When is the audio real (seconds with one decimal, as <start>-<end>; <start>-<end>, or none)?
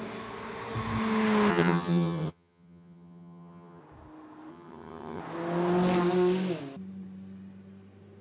0.0-1.5; 3.8-4.5; 5.2-8.2